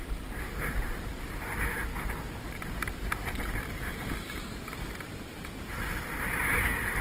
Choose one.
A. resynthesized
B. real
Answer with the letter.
A